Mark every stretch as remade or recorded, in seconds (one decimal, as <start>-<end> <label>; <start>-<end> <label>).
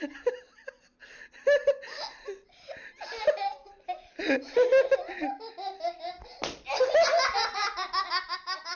0.0-8.8 recorded